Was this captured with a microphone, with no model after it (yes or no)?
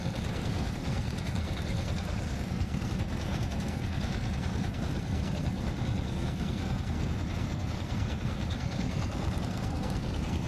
no